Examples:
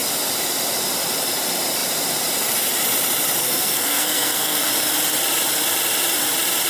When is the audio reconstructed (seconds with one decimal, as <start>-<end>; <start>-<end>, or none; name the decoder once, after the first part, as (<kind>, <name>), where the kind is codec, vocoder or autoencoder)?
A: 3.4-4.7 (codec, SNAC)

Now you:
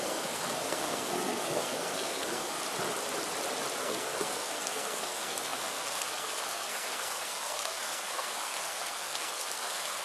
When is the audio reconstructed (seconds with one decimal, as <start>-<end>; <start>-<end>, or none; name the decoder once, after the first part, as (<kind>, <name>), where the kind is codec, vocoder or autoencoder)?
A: 0.0-2.6 (codec, SNAC); 3.8-10.0

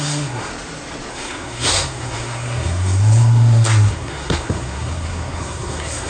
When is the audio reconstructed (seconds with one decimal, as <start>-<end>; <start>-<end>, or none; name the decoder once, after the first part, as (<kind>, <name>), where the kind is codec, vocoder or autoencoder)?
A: 0.0-0.5 (codec, SNAC); 1.1-6.1

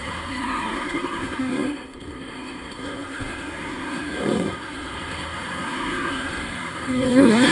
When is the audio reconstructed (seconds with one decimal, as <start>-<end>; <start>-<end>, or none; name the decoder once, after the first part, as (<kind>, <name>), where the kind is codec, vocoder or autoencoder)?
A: 0.0-7.5 (codec, SNAC)

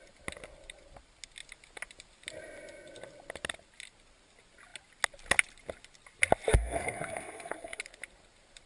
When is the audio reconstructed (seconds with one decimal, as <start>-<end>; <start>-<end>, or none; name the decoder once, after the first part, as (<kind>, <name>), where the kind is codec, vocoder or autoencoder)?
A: 6.5-7.8 (codec, SNAC)

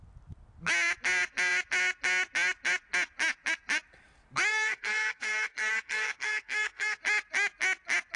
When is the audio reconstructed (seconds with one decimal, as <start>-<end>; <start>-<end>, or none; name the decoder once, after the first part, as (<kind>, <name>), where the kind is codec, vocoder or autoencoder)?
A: 4.5-7.0 (codec, SNAC)